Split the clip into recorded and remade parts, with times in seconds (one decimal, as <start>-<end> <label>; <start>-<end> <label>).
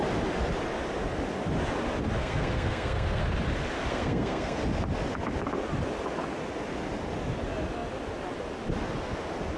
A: 0.0-2.2 recorded; 2.2-3.2 remade; 3.2-3.9 recorded; 3.9-4.6 remade; 4.6-9.6 recorded